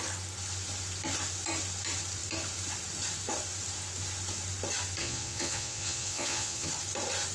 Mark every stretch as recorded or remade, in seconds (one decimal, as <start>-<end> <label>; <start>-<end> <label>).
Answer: 0.0-5.0 recorded; 5.0-6.7 remade; 6.7-7.3 recorded